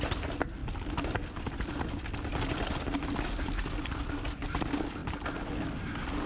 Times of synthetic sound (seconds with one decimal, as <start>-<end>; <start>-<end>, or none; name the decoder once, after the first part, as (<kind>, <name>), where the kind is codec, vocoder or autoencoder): none